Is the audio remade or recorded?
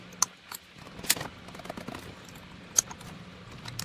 recorded